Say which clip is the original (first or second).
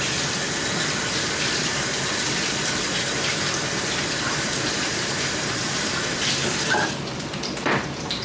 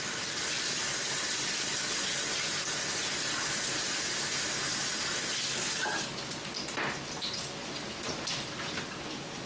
second